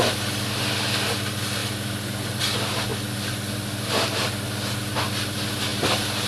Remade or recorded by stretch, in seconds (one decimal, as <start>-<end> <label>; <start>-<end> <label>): 0.0-6.3 recorded